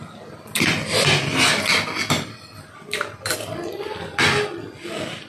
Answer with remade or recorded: recorded